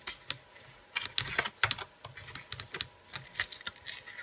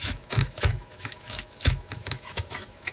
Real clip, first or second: first